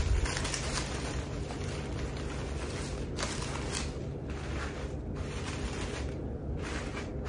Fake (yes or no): no